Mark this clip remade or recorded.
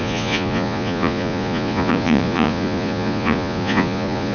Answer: remade